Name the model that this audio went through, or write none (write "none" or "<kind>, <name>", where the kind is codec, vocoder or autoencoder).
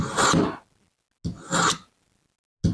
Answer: none